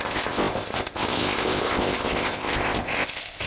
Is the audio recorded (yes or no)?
no